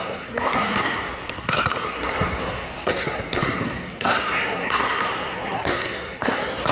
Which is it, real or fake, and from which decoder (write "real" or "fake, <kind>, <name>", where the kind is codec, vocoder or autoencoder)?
fake, codec, SNAC